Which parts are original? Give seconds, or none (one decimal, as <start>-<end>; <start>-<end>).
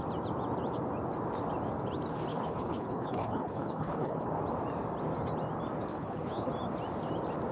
0.0-2.3; 4.3-5.9; 6.5-7.5